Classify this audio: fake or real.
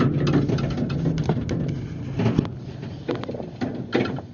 real